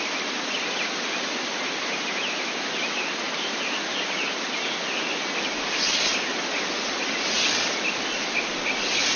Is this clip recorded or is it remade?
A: recorded